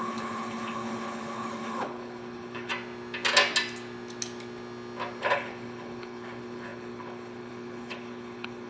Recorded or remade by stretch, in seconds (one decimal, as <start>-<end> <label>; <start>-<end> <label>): 0.0-2.7 remade; 2.7-5.2 recorded; 5.2-8.7 remade